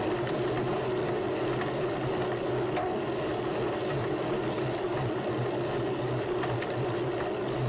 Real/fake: real